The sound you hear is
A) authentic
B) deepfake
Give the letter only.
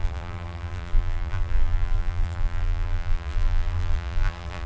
B